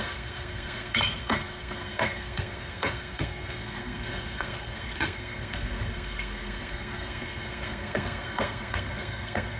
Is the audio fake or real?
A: fake